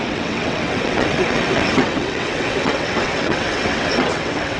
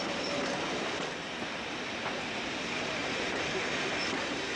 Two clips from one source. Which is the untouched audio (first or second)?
second